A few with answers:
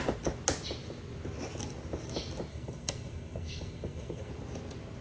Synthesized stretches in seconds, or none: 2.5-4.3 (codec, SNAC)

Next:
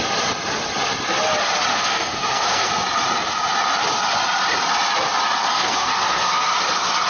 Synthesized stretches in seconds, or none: 1.7-2.7 (codec, SNAC); 5.5-6.5